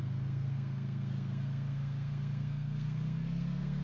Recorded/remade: remade